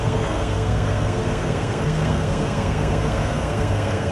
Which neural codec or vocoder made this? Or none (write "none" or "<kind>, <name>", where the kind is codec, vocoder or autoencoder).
codec, SNAC